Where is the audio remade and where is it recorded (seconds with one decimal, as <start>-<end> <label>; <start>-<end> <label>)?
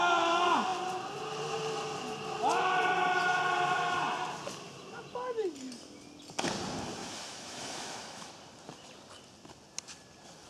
0.0-7.0 recorded; 7.0-8.3 remade; 8.3-10.5 recorded